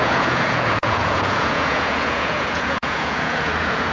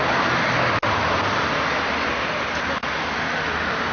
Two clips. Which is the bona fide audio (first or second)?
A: second